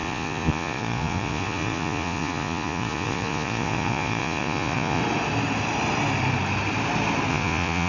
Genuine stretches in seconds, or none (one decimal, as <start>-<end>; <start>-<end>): 5.0-7.3